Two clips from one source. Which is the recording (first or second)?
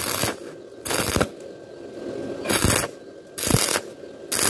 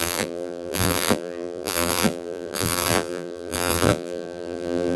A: first